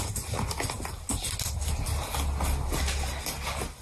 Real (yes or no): yes